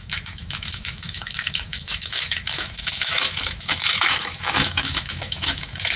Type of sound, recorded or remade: remade